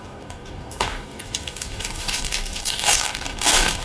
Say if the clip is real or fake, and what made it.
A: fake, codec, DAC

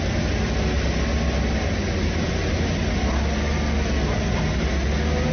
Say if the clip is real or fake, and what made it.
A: real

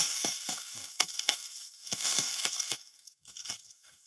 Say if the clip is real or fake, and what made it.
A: fake, codec, DAC